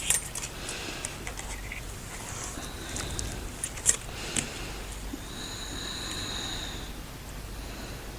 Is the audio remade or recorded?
recorded